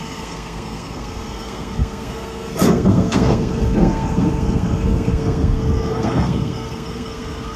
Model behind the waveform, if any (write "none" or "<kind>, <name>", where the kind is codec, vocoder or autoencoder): codec, SNAC